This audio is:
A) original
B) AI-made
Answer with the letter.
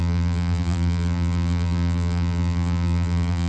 B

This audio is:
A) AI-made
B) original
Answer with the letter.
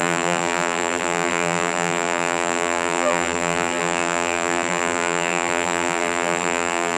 A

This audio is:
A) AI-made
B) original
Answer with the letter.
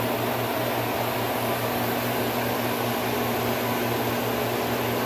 B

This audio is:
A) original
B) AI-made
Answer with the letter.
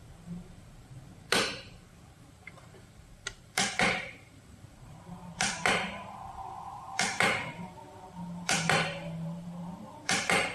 B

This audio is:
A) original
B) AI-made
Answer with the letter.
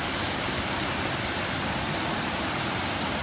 B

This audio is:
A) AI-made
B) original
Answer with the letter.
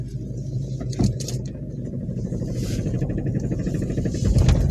B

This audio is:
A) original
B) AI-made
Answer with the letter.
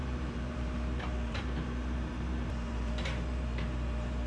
B